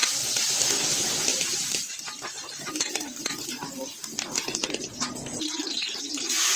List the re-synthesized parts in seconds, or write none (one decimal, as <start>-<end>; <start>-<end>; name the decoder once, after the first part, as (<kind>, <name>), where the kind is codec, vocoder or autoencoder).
1.3-2.7 (vocoder, BigVGAN v2)